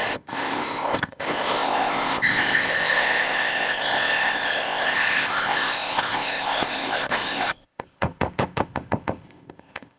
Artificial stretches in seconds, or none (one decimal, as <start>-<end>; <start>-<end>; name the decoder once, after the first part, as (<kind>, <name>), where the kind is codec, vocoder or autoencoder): 0.0-10.0 (codec, ZipCodec)